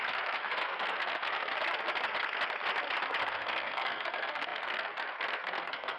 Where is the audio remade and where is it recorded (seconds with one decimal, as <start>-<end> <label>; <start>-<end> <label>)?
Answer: 0.0-1.5 remade; 1.5-3.2 recorded; 3.2-6.0 remade